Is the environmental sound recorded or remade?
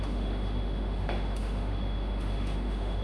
remade